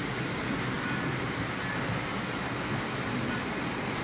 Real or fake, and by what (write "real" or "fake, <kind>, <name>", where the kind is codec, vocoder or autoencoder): real